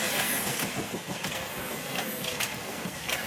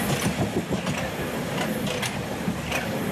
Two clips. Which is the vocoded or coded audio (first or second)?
first